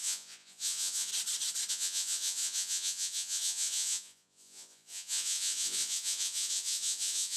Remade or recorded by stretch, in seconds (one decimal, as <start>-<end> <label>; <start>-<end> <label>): 0.0-1.1 remade; 1.1-1.7 recorded; 1.7-7.4 remade